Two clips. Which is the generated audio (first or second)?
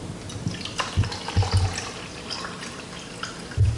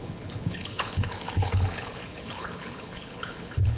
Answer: second